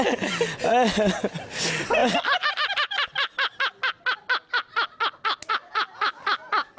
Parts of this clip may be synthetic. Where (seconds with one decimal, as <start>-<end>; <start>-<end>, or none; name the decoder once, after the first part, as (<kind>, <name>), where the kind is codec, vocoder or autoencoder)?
none